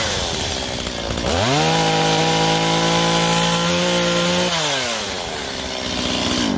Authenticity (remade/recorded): recorded